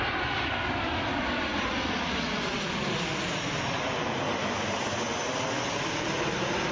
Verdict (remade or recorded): recorded